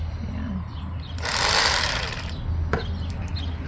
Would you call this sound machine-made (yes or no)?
no